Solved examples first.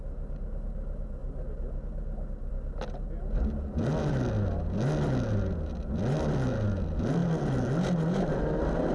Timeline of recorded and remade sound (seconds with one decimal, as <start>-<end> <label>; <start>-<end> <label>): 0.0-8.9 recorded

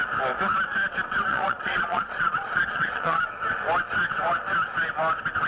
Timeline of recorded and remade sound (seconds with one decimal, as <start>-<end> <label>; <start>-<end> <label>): 0.0-1.3 recorded; 1.3-3.4 remade; 3.4-5.5 recorded

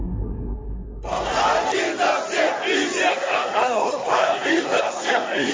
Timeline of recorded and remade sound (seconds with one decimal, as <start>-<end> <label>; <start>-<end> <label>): 0.0-1.3 remade; 1.3-3.1 recorded; 3.1-5.5 remade

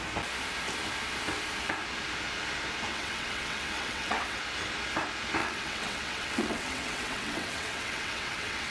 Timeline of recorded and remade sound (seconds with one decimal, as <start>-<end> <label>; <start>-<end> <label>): 0.0-2.9 recorded; 2.9-4.4 remade; 4.4-5.4 recorded; 5.4-8.7 remade

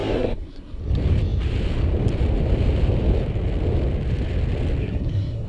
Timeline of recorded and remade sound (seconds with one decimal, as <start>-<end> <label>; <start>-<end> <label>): 0.0-0.8 remade; 0.8-4.8 recorded; 4.8-5.5 remade

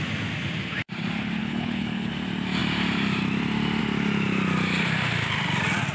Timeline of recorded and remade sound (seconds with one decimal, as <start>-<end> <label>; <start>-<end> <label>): 0.0-1.4 recorded; 1.4-2.1 remade; 2.1-5.9 recorded

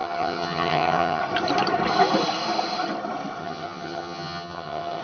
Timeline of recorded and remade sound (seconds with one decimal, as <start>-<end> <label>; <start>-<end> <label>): 0.0-1.2 remade; 1.2-3.4 recorded; 3.4-5.0 remade